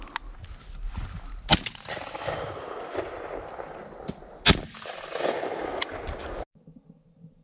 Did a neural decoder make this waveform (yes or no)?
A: no